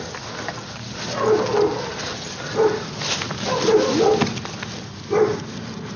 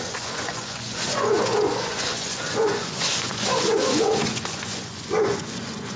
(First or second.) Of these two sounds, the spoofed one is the second